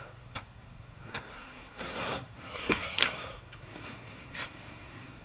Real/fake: fake